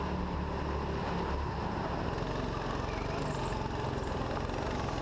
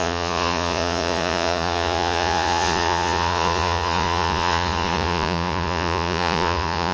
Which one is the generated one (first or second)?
second